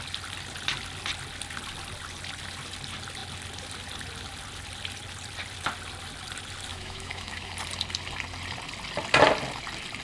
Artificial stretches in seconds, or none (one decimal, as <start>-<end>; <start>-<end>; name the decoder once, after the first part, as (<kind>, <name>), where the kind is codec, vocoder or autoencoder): 6.7-7.5 (autoencoder, DAC-VAE)